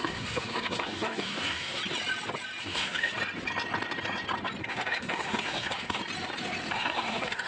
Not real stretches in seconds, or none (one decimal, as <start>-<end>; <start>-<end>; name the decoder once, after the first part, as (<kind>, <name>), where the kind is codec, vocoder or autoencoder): 0.0-1.8 (codec, SNAC); 2.6-3.1; 4.6-6.0; 6.7-7.5